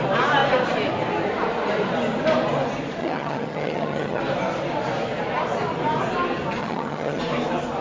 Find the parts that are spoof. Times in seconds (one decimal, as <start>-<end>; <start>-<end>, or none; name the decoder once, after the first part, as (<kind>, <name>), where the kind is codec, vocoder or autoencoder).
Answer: 3.0-4.2 (vocoder, HiFi-GAN); 6.6-7.2